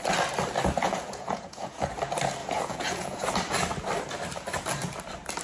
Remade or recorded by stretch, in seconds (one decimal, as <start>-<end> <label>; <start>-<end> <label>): 0.0-0.8 recorded; 0.8-1.9 remade; 1.9-2.4 recorded; 2.4-3.3 remade; 3.3-5.4 recorded